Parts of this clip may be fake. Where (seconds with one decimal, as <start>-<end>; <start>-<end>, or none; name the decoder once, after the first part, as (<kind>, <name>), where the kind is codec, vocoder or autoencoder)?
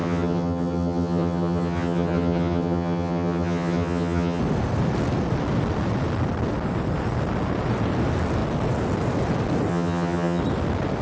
0.0-4.4 (vocoder, HiFi-GAN); 9.7-10.4